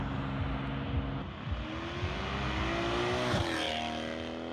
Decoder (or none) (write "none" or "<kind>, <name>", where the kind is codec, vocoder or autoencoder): none